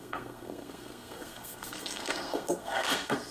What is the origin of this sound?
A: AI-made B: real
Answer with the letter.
A